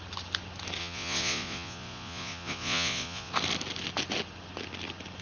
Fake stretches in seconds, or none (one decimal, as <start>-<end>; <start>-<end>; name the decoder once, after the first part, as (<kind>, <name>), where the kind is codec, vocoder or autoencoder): 0.8-3.3 (vocoder, Vocos)